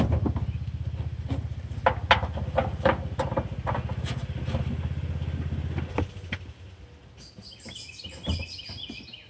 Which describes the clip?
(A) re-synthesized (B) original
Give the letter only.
B